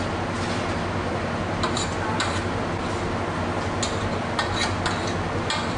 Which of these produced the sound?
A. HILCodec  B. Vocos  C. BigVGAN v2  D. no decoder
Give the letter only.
D